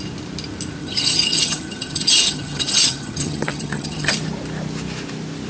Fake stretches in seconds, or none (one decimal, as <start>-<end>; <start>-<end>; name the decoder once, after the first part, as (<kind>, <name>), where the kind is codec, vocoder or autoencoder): 0.8-4.1 (vocoder, HiFi-GAN)